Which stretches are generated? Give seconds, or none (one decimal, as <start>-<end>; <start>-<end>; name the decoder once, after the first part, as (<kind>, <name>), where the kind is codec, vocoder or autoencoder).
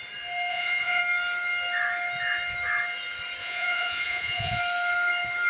0.5-1.0 (vocoder, Vocos); 3.4-4.6